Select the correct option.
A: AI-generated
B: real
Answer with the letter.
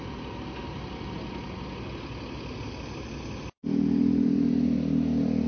B